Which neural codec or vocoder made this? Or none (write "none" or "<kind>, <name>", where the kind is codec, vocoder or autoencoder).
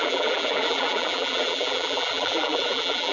vocoder, BigVGAN v2